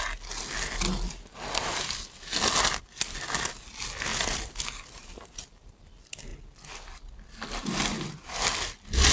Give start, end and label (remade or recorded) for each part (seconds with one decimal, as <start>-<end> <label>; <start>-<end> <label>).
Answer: 0.0-4.1 recorded; 4.1-5.8 remade; 5.8-9.1 recorded